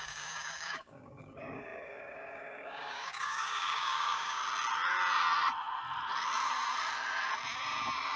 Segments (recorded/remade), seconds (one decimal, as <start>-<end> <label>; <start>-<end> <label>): 0.0-4.4 remade; 4.4-8.2 recorded